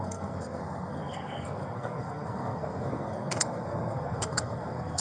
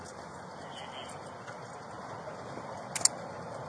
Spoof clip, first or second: first